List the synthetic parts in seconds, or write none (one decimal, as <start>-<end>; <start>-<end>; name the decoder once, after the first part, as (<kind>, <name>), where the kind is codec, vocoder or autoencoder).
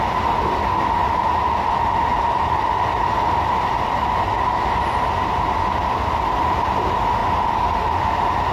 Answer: 2.1-2.7 (vocoder, BigVGAN v2); 7.2-8.1